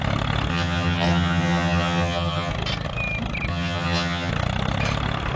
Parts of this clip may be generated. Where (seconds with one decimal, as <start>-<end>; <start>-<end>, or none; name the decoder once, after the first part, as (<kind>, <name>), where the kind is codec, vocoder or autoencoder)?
0.5-2.5 (vocoder, HiFi-GAN); 3.5-4.3